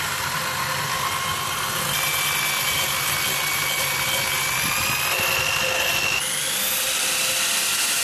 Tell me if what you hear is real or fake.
real